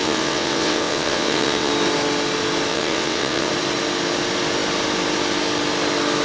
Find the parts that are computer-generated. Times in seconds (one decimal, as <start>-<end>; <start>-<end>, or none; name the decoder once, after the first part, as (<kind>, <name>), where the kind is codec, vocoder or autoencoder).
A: 0.0-1.7 (vocoder, WaveNeXt); 2.7-3.5